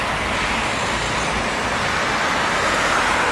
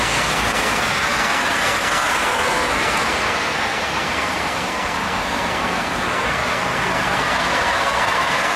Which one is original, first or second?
first